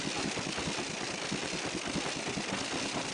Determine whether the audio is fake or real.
real